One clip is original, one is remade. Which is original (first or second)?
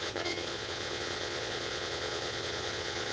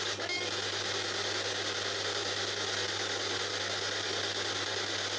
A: second